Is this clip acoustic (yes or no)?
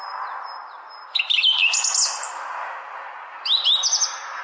yes